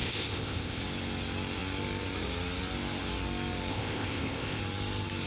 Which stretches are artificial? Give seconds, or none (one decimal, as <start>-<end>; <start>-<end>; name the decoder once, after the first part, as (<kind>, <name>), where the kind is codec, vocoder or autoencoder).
0.0-0.8 (codec, ZipCodec); 3.7-4.6